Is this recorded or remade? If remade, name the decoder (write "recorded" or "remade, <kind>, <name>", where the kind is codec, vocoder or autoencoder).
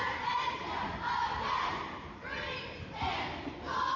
recorded